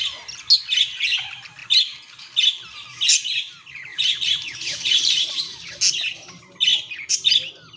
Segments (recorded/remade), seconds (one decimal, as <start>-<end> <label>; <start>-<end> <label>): 0.0-3.9 recorded; 3.9-5.7 remade; 5.7-7.8 recorded

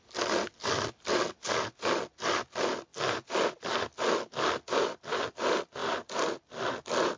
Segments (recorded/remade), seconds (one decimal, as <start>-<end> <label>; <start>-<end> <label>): 0.0-2.9 remade; 2.9-3.5 recorded; 3.5-5.8 remade; 5.8-6.8 recorded; 6.8-7.2 remade

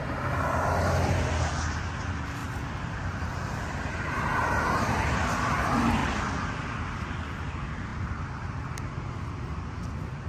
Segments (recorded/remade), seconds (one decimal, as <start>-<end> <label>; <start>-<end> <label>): 0.0-2.4 recorded; 2.4-4.0 remade; 4.0-6.0 recorded; 6.0-7.0 remade; 7.0-10.3 recorded

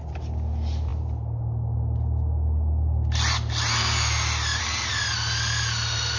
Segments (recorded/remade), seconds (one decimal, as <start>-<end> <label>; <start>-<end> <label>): 0.0-6.2 recorded

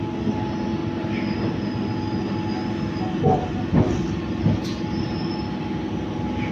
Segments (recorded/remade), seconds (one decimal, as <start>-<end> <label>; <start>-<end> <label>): 0.0-6.5 recorded

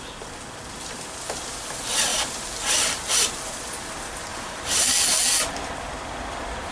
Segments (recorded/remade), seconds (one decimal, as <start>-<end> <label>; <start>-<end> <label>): 0.0-2.1 recorded; 2.1-2.7 remade; 2.7-4.3 recorded; 4.3-4.8 remade; 4.8-6.7 recorded

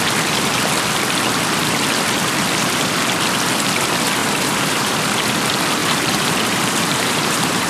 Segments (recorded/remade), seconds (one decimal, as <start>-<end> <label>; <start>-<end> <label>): 0.0-4.2 recorded; 4.2-4.9 remade; 4.9-5.8 recorded; 5.8-7.7 remade